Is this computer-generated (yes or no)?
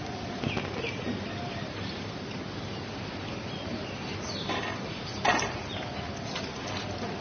no